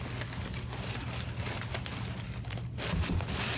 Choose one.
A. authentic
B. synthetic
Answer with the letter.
A